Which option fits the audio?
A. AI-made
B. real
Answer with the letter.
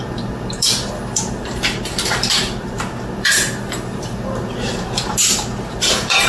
A